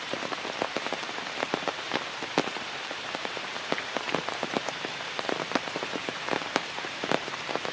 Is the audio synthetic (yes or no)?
yes